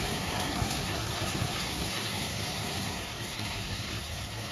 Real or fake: fake